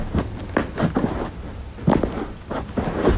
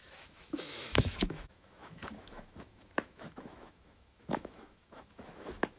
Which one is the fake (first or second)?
second